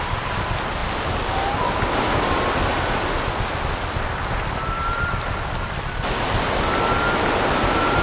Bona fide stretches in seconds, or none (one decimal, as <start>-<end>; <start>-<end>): 0.0-8.0